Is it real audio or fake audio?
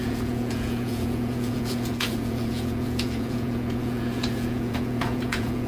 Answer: fake